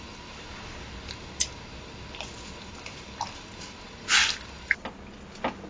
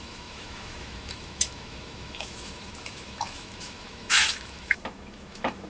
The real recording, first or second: first